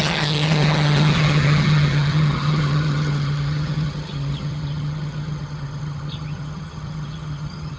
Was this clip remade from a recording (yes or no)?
yes